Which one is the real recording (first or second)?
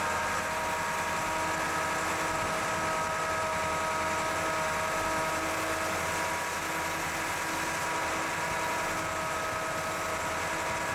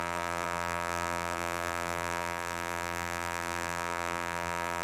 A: first